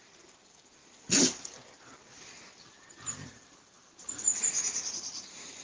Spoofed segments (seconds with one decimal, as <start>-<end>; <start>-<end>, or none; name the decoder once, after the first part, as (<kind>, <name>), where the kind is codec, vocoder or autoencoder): 3.1-5.6 (vocoder, BigVGAN v2)